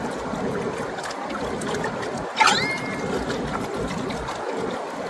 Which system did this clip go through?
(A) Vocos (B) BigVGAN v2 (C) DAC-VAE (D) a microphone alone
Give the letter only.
D